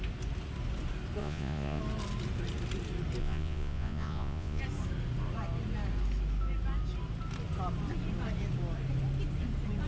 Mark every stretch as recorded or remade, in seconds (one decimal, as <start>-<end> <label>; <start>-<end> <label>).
0.0-1.2 recorded; 1.2-1.8 remade; 1.8-3.2 recorded; 3.2-4.6 remade; 4.6-9.9 recorded